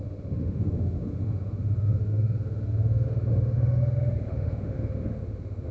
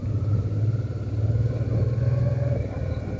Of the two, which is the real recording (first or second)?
second